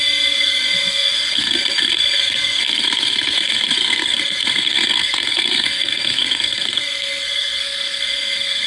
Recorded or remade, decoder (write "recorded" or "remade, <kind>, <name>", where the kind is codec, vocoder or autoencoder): remade, codec, SNAC